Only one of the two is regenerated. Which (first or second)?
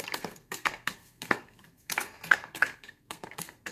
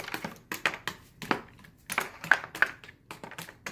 first